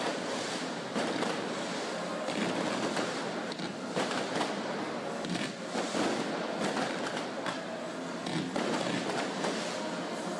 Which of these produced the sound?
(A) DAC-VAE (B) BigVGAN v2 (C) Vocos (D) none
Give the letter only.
D